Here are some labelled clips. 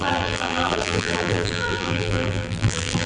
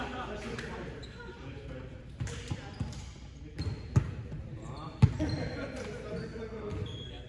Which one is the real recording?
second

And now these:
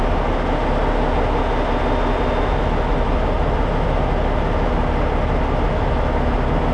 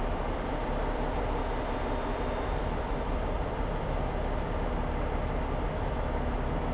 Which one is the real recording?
first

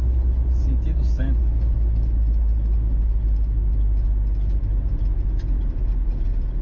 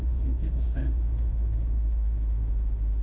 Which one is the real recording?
first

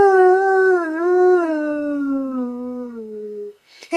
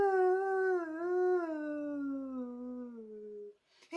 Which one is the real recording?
second